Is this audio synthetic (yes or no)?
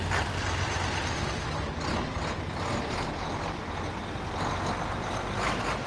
no